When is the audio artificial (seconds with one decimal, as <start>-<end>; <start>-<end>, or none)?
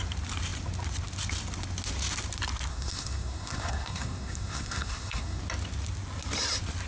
2.7-5.4